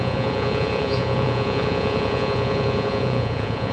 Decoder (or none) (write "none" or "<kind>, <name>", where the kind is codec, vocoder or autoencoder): vocoder, Vocos